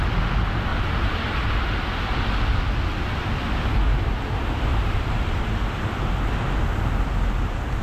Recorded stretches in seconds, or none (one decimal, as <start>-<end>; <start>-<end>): 0.0-0.7; 1.4-4.7; 5.3-7.8